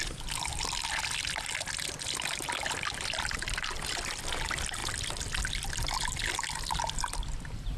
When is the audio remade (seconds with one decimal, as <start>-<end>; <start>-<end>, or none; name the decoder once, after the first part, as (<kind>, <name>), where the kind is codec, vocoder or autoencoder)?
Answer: none